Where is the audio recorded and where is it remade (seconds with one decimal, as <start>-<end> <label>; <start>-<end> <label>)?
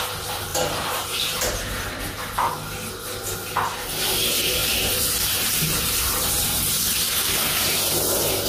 0.0-0.5 recorded; 0.5-2.0 remade; 2.0-4.6 recorded; 4.6-7.9 remade; 7.9-8.5 recorded